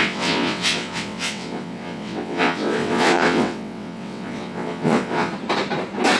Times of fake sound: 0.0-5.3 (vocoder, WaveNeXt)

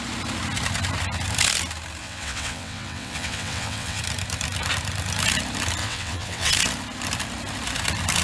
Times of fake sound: 2.0-4.0 (vocoder, WaveNeXt); 5.8-6.5